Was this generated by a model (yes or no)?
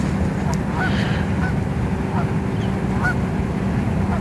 no